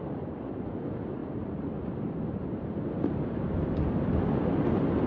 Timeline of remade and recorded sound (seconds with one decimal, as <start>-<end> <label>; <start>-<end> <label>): 0.0-5.1 recorded